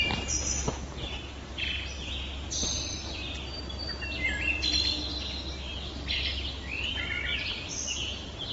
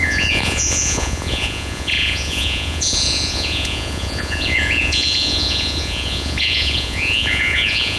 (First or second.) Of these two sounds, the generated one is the second